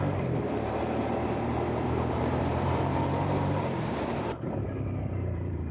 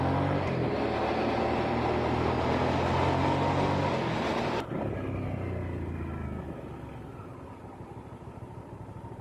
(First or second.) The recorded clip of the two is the second